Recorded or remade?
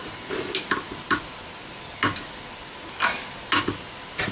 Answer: recorded